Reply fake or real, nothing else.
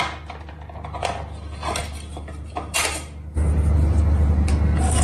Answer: real